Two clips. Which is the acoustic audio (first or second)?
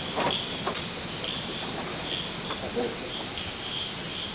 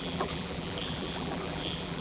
first